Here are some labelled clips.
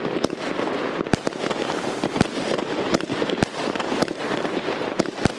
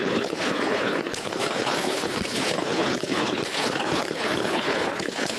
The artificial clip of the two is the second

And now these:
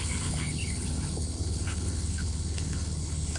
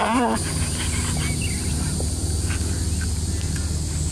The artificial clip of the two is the first